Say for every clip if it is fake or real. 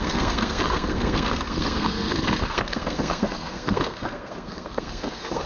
fake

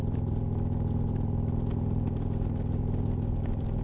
real